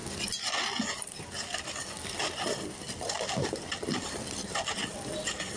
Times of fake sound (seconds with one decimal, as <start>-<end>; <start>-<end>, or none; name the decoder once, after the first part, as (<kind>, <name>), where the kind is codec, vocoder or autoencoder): 2.7-5.6 (vocoder, BigVGAN v2)